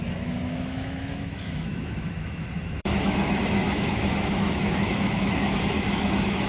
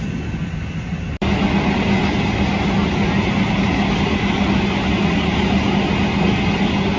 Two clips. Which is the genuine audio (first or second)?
second